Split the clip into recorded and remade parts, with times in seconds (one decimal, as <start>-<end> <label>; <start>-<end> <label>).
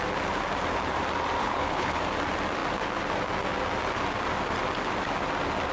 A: 0.0-1.4 recorded; 1.4-2.0 remade; 2.0-5.7 recorded